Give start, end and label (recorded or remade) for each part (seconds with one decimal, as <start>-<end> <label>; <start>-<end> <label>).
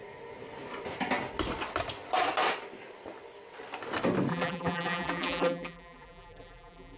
0.0-4.3 recorded; 4.3-7.0 remade